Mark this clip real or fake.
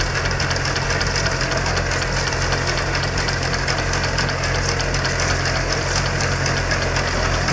real